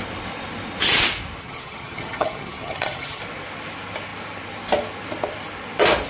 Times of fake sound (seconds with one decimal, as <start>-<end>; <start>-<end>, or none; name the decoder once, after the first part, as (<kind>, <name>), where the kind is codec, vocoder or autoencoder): 1.4-3.2 (vocoder, HiFi-GAN)